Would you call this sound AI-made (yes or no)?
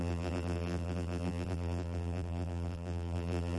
yes